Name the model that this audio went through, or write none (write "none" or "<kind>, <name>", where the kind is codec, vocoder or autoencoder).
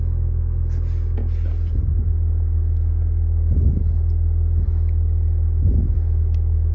none